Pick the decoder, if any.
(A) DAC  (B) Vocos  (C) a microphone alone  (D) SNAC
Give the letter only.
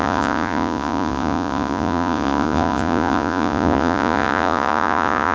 B